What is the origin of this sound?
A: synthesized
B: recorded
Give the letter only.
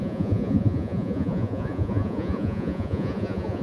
A